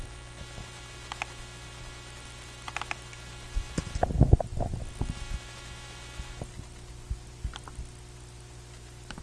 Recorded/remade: recorded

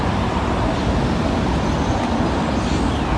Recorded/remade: recorded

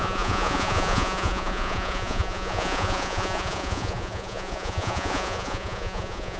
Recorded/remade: remade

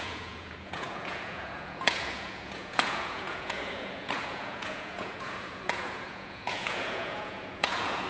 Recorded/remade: remade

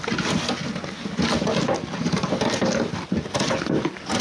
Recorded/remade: recorded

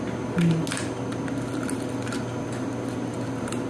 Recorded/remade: recorded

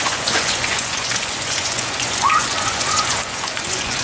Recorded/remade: remade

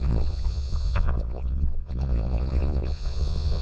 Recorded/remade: remade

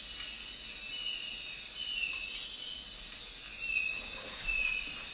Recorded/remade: recorded